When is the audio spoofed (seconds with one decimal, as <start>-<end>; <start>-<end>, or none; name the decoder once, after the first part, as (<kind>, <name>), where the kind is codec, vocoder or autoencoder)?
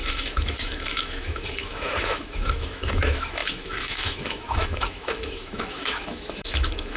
0.0-7.0 (autoencoder, DAC-VAE)